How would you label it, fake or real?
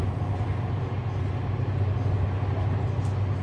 real